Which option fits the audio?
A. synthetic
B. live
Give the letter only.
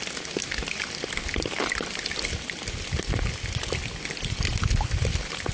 B